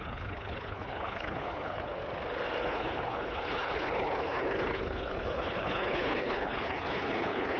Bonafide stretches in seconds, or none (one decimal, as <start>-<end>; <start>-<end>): 2.0-2.6

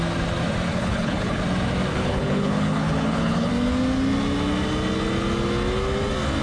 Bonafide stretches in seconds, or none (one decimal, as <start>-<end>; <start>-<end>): 0.0-0.7; 1.4-1.9; 3.5-6.4

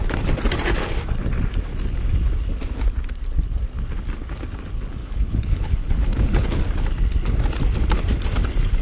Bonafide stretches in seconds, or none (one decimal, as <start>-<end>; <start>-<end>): 0.0-5.0; 6.6-8.8

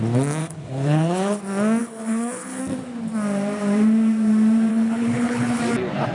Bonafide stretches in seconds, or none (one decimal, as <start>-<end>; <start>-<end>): 0.0-0.4; 1.4-1.8; 2.6-4.7; 5.6-6.1

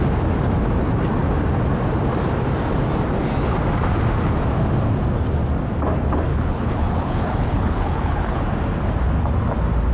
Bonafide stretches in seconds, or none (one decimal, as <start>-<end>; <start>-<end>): 0.0-6.3; 8.4-9.9

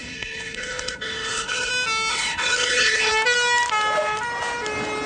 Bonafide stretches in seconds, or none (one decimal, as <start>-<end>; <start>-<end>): 1.7-2.1; 3.1-5.1